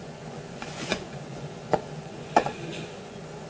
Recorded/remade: remade